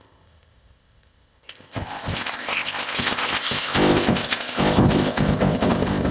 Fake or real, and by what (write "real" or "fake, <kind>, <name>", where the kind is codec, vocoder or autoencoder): fake, codec, ZipCodec